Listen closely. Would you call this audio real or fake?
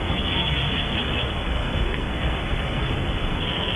fake